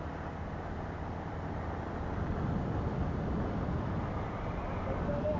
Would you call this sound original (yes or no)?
yes